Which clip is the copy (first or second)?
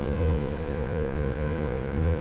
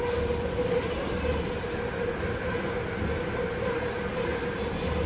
first